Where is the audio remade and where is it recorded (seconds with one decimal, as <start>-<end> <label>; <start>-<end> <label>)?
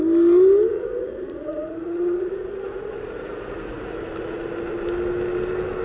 0.0-0.7 recorded; 0.7-4.0 remade; 4.0-5.8 recorded